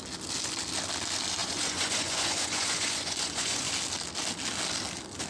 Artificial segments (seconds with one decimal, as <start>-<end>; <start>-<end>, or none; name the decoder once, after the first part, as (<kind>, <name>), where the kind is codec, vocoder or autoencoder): 1.4-3.7 (vocoder, Vocos)

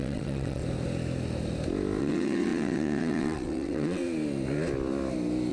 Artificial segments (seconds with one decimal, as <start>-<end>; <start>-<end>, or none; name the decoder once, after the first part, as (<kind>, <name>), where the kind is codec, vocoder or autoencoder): 0.0-0.6 (vocoder, WaveNeXt); 2.0-4.0

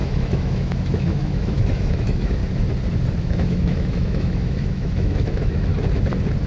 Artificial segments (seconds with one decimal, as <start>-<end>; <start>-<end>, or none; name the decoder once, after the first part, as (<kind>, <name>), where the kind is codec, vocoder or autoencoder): 0.0-2.4 (autoencoder, DAC-VAE); 3.2-5.7

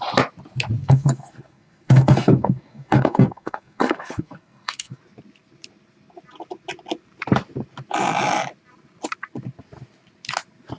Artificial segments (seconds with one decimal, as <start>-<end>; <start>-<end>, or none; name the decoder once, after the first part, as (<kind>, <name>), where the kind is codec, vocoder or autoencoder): 0.8-5.0 (codec, SNAC)